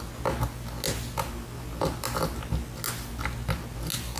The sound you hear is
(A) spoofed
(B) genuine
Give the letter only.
B